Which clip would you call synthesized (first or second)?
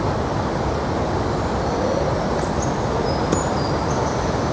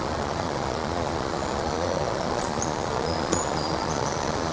second